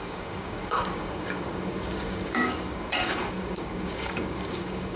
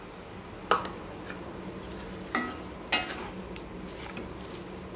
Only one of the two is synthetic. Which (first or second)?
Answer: first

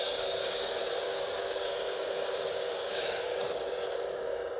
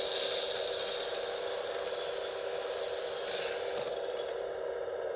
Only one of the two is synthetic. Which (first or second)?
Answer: first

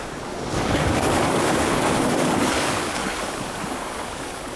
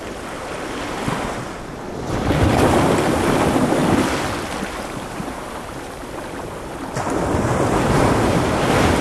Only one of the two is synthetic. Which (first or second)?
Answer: first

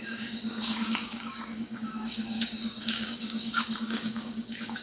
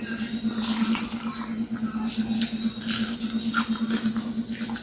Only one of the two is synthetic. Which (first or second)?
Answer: first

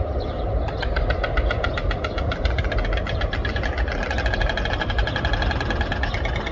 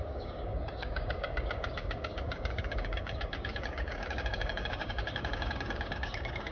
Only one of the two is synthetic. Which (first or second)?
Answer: second